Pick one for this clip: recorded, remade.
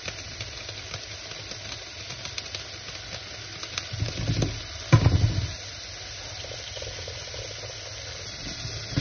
recorded